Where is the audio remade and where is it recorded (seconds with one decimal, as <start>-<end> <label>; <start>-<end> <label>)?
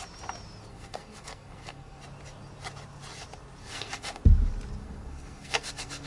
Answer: 0.0-0.7 recorded; 0.7-2.0 remade; 2.0-3.6 recorded; 3.6-4.2 remade; 4.2-4.8 recorded; 4.8-6.1 remade